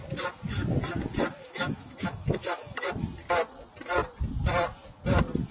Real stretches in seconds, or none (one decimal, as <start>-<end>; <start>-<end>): 0.0-1.4; 2.9-5.5